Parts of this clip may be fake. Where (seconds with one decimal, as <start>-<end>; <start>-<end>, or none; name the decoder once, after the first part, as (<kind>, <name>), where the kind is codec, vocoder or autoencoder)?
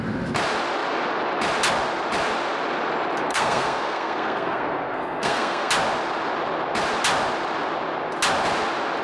3.3-5.7 (codec, SNAC)